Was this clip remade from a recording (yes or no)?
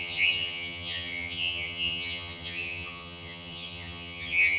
yes